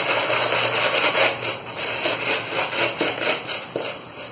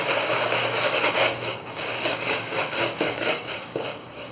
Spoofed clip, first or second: second